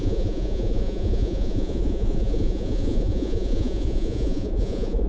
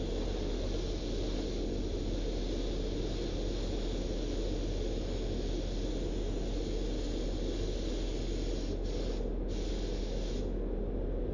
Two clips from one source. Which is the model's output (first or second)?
first